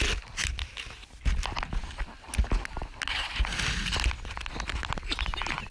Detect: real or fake real